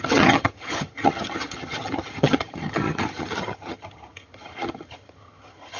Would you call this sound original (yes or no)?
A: no